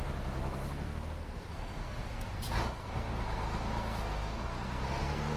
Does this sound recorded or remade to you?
remade